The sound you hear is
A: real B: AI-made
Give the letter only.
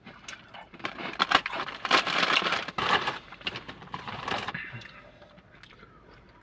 B